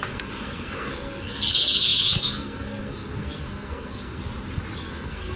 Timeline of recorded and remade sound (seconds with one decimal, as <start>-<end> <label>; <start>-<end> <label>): 0.0-4.2 remade; 4.2-4.8 recorded; 4.8-5.4 remade